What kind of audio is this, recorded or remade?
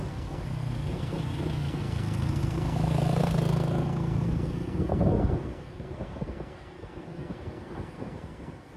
remade